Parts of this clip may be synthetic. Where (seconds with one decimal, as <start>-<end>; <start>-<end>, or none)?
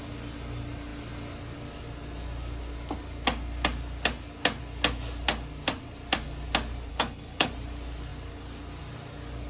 6.9-7.5